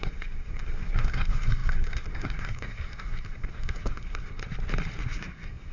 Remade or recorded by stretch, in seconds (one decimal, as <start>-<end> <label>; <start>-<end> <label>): 0.0-4.4 remade; 4.4-5.0 recorded; 5.0-5.7 remade